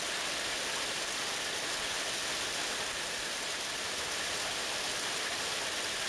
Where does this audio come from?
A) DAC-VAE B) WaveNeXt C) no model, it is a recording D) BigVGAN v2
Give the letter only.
C